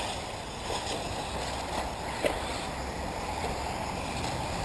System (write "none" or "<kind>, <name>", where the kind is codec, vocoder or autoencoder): none